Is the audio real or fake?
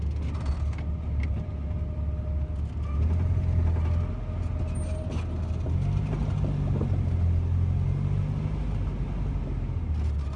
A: real